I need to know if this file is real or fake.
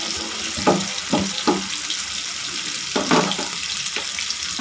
real